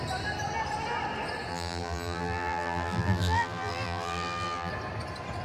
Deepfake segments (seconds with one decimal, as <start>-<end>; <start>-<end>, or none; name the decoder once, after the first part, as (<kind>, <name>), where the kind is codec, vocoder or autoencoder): 1.5-4.7 (vocoder, BigVGAN v2)